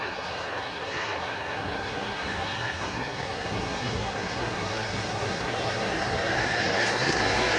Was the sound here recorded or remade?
remade